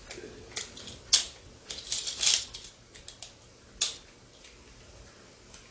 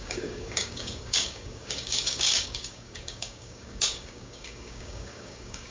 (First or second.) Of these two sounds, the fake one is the second